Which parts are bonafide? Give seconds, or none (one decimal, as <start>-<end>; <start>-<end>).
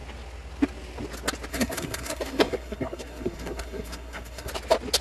0.0-1.5; 4.5-5.0